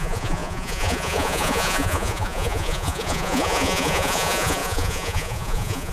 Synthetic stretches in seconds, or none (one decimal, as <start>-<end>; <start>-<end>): 0.0-5.9